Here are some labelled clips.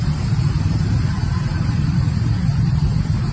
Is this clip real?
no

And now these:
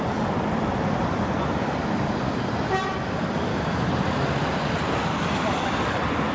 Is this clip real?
no